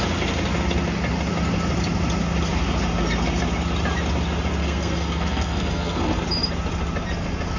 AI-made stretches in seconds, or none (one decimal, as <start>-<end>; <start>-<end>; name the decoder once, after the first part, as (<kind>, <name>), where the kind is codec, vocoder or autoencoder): 4.6-6.2 (codec, SNAC)